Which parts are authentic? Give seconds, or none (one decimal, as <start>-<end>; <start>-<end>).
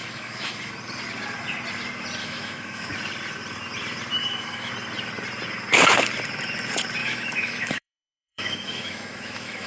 0.7-2.2; 2.9-4.2; 4.7-7.0